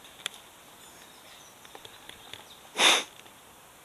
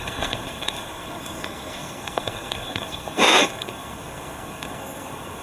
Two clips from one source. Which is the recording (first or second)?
first